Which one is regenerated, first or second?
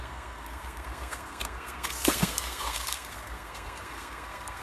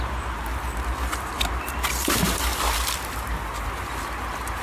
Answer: first